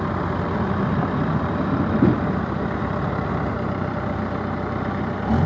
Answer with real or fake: real